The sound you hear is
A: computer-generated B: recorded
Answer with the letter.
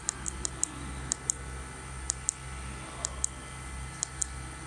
A